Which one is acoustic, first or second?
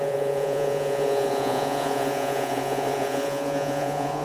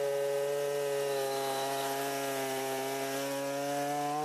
second